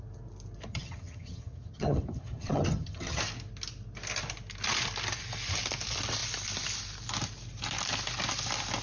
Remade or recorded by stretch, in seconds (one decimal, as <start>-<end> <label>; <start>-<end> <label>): 0.0-0.7 recorded; 0.7-3.2 remade; 3.2-8.8 recorded